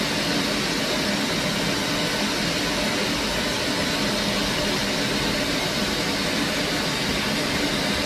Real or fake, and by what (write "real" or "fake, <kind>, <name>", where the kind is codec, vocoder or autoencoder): real